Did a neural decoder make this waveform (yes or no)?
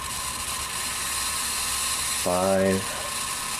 no